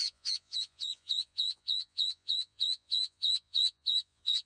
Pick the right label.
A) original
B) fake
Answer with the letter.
B